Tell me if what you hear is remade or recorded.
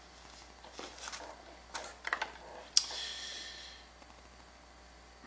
recorded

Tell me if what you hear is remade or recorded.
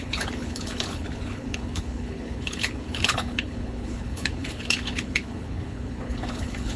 remade